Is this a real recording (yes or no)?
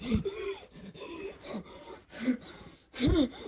no